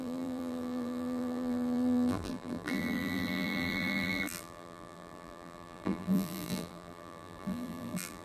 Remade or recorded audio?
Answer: remade